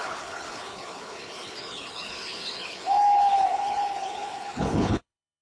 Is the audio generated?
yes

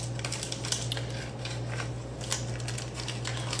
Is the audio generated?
no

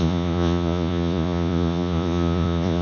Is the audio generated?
yes